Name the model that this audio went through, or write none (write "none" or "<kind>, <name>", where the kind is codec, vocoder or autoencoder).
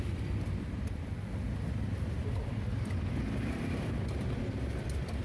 none